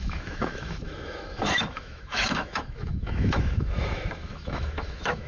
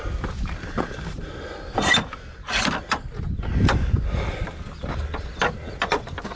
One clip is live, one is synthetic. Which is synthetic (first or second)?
first